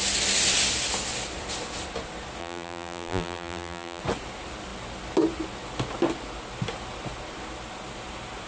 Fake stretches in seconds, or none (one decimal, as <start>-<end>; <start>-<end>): 2.4-4.0